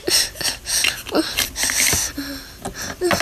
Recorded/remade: recorded